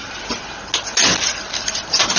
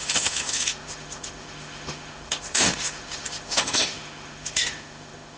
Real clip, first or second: first